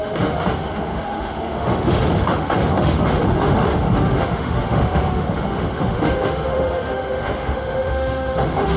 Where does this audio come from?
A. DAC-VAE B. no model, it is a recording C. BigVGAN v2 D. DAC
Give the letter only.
A